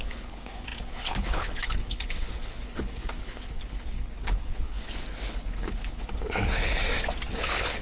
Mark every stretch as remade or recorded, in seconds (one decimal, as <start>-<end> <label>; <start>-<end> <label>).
0.0-6.8 remade; 6.8-7.3 recorded; 7.3-7.8 remade